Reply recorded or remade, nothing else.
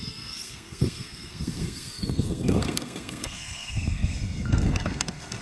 remade